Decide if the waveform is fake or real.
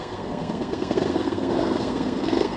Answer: fake